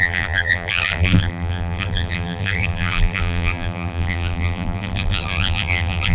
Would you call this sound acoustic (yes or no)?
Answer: no